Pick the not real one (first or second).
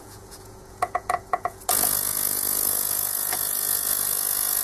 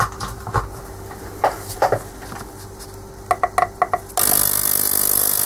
first